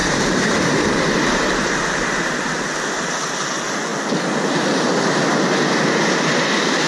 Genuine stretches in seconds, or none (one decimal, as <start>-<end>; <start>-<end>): 2.3-6.9